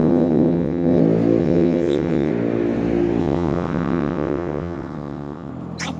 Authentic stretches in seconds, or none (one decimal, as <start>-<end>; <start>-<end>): 1.0-1.4; 2.3-3.2; 5.5-6.0